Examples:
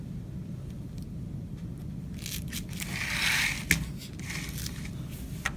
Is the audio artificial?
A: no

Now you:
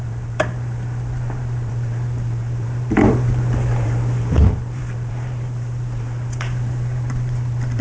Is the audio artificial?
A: yes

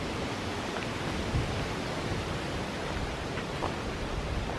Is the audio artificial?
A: no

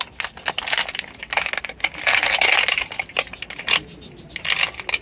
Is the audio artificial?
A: no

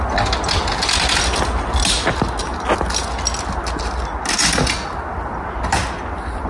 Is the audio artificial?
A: no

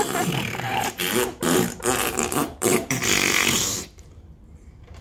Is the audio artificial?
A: yes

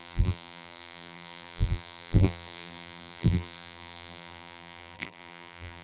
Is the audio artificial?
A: yes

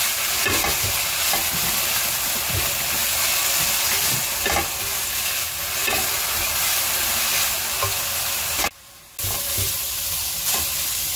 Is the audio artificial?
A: no